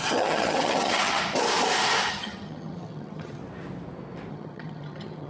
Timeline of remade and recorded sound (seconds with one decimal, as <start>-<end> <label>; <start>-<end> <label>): 0.0-1.2 remade; 1.2-2.1 recorded; 2.1-3.4 remade; 3.4-4.3 recorded; 4.3-5.3 remade